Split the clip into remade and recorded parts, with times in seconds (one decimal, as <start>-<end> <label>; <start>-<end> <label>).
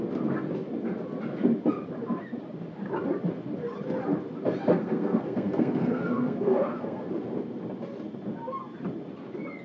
0.0-4.7 recorded; 4.7-7.1 remade; 7.1-9.6 recorded